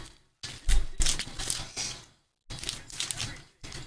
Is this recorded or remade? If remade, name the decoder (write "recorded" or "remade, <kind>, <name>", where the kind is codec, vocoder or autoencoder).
recorded